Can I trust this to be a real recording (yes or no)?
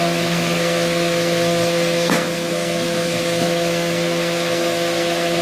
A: no